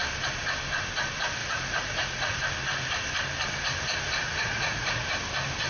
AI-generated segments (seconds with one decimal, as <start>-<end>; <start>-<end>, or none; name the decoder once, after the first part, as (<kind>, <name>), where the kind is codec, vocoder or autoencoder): 1.4-2.4 (vocoder, Vocos); 4.2-5.0